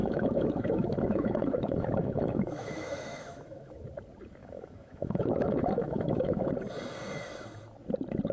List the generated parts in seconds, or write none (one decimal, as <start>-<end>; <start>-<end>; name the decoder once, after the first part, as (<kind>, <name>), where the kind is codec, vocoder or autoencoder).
0.0-3.8 (autoencoder, DAC-VAE); 4.4-6.5